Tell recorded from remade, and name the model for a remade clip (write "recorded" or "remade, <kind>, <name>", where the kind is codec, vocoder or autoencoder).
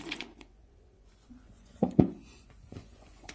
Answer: remade, vocoder, Vocos